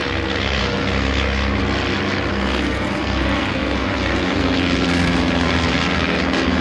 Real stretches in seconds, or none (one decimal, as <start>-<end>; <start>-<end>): 1.6-2.3